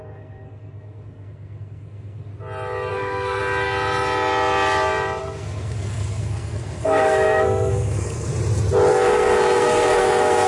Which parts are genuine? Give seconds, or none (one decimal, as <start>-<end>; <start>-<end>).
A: 2.3-2.9; 3.4-5.2; 8.3-8.9